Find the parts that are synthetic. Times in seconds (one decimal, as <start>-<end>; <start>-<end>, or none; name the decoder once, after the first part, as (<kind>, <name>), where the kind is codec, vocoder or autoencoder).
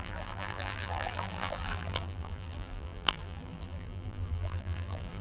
0.0-5.2 (vocoder, BigVGAN v2)